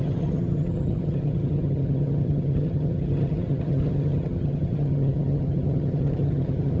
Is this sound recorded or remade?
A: remade